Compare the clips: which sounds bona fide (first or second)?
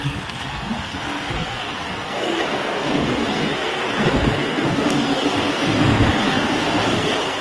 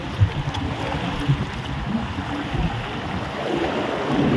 second